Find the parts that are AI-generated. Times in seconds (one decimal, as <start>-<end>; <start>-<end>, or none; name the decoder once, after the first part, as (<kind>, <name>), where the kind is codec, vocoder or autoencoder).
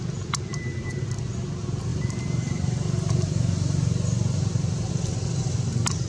0.5-1.2 (vocoder, BigVGAN v2); 1.9-4.9